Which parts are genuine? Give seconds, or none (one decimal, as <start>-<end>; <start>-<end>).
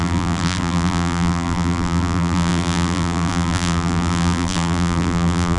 none